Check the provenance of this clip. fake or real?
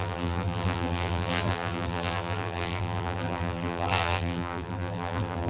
fake